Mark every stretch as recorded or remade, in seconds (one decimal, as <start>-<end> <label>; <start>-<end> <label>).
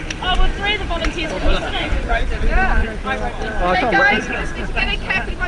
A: 0.0-1.4 recorded; 1.4-2.0 remade; 2.0-5.5 recorded